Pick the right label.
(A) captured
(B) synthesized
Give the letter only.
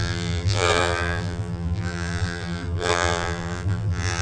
B